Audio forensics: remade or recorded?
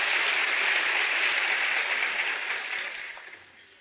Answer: recorded